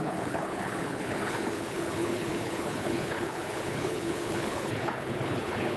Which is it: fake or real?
fake